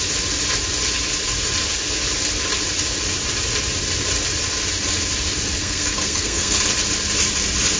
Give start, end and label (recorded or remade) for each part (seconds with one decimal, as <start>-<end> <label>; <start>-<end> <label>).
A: 0.0-5.6 recorded; 5.6-6.6 remade; 6.6-7.8 recorded